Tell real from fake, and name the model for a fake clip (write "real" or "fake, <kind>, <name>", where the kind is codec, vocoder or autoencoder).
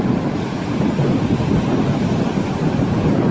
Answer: fake, vocoder, BigVGAN v2